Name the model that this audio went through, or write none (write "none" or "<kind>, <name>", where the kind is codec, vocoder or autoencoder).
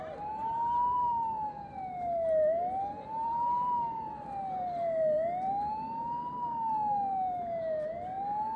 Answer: vocoder, BigVGAN v2